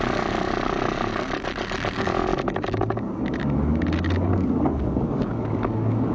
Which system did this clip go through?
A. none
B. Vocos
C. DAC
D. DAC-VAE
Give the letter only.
C